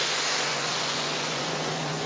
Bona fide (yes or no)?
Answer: no